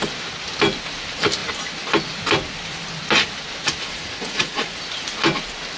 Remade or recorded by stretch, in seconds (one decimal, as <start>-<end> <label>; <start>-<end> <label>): 0.0-3.9 recorded; 3.9-4.8 remade; 4.8-5.8 recorded